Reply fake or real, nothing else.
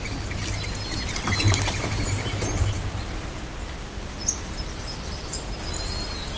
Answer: real